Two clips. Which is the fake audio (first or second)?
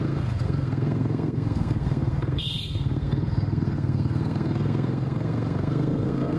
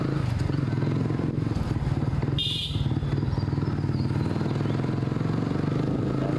first